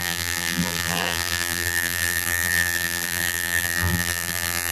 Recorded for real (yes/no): no